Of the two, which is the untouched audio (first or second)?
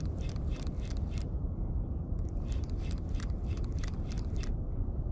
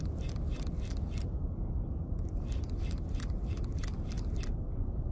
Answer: second